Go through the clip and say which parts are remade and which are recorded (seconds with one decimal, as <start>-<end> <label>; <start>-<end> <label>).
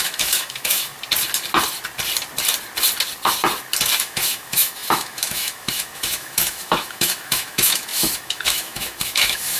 0.0-0.9 remade; 0.9-4.0 recorded; 4.0-9.6 remade